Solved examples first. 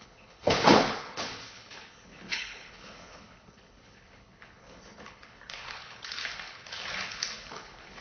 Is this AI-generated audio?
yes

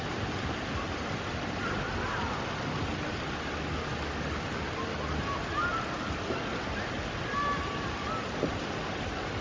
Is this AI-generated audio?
no